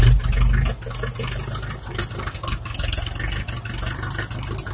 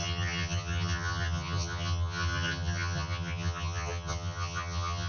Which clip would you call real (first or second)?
first